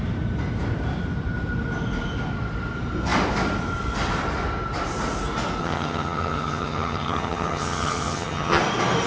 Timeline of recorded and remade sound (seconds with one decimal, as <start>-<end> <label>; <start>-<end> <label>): 0.0-5.6 recorded; 5.6-8.6 remade; 8.6-9.1 recorded